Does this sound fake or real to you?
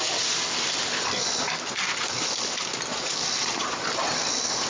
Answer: real